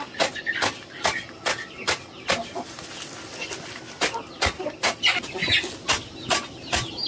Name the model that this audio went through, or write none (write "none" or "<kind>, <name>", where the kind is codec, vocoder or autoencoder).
none